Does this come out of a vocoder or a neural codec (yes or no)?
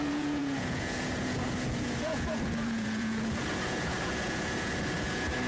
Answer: yes